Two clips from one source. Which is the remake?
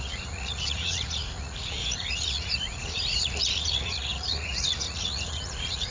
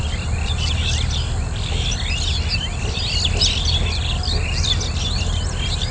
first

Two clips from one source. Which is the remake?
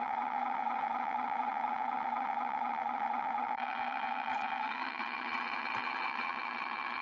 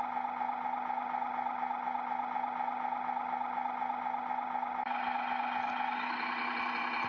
first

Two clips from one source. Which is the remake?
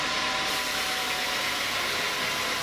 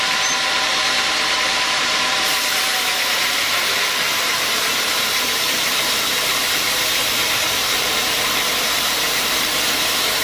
second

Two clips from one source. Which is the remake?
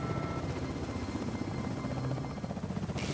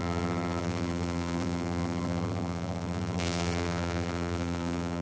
second